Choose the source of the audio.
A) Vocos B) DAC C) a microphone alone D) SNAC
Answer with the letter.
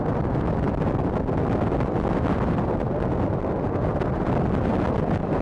C